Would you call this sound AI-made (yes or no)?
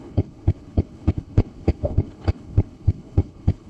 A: yes